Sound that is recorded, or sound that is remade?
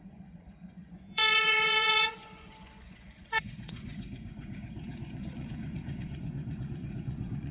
remade